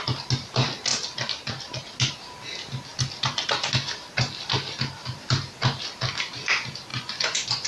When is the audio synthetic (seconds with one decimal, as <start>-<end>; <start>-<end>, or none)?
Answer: 6.9-7.7